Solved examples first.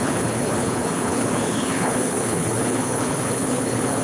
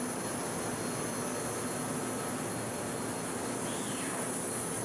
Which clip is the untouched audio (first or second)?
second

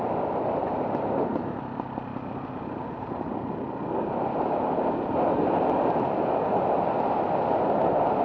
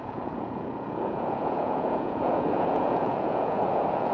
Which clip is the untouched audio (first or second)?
first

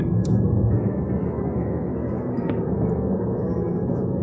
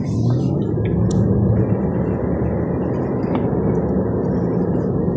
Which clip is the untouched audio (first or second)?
second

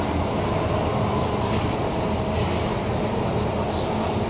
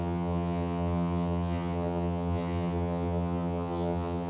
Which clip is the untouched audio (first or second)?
first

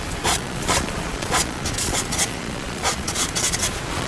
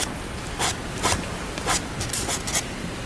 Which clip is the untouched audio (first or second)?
second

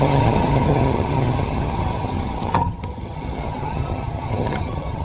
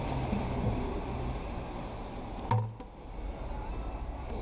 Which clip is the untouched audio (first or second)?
second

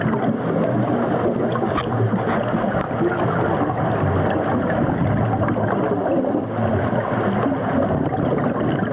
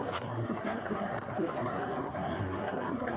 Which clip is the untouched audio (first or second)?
first